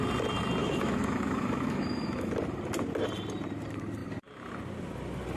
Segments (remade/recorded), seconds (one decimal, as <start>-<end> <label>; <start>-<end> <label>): 0.0-0.6 recorded; 0.6-2.3 remade; 2.3-5.4 recorded